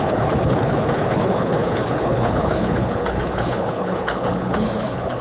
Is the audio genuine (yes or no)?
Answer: no